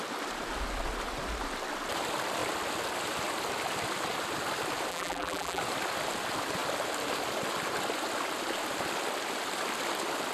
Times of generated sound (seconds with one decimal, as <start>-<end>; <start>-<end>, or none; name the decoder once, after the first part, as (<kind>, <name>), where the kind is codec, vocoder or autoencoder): 4.9-5.6 (vocoder, BigVGAN v2)

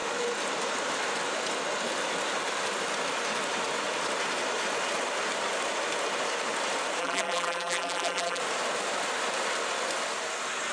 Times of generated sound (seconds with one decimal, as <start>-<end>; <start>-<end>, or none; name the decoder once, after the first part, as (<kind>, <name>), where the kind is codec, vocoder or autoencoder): 7.0-8.4 (vocoder, BigVGAN v2)

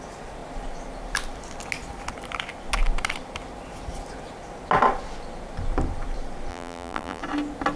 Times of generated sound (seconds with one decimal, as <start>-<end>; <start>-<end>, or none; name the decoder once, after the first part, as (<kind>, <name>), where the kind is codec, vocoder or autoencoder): 6.5-7.2 (vocoder, BigVGAN v2)

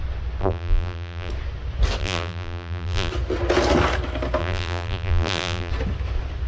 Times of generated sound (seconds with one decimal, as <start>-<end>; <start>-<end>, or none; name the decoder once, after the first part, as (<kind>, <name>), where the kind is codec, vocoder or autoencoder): 0.4-1.3 (vocoder, BigVGAN v2); 2.0-3.1; 4.4-5.7

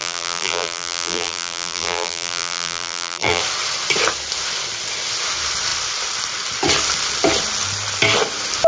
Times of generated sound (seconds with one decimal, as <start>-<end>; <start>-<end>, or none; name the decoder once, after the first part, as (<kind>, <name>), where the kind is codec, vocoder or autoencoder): 0.0-3.4 (vocoder, BigVGAN v2)

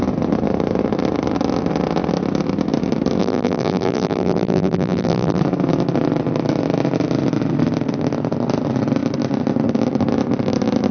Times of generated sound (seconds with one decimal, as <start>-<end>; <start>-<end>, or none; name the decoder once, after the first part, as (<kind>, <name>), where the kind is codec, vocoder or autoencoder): 3.2-5.4 (vocoder, BigVGAN v2)

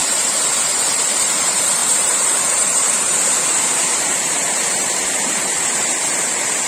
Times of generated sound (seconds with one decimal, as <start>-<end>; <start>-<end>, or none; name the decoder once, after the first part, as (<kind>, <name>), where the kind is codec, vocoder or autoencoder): 0.6-6.7 (vocoder, BigVGAN v2)